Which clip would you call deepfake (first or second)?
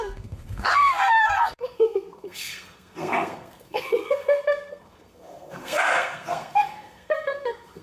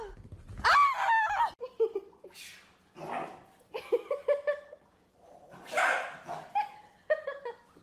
first